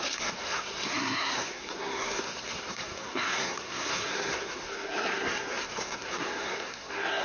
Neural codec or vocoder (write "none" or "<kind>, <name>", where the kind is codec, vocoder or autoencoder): codec, SNAC